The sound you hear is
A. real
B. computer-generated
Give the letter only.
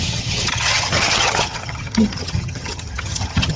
B